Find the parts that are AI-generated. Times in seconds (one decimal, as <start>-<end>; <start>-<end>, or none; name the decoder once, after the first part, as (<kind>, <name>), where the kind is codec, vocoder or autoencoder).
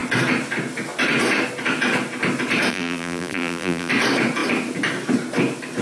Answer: 2.7-3.9 (vocoder, BigVGAN v2)